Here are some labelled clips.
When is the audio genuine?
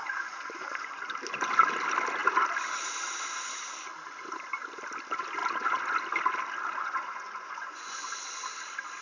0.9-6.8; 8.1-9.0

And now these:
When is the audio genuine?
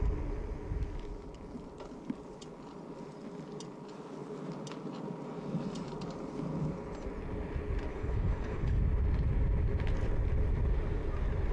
0.0-7.9; 8.8-11.5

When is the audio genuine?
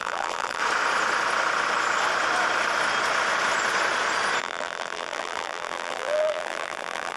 0.6-4.4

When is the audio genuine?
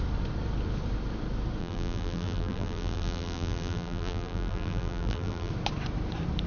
0.0-1.6; 5.5-6.5